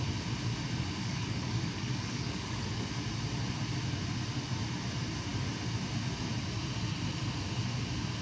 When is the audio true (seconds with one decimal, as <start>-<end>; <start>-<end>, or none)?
0.0-1.0; 2.9-8.2